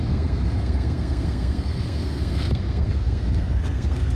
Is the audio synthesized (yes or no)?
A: yes